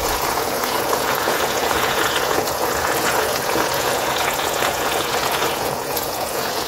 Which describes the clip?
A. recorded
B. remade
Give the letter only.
B